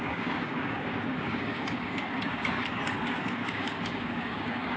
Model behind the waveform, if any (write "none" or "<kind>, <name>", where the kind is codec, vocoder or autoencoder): codec, DAC